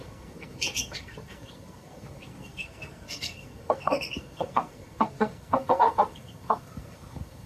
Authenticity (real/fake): fake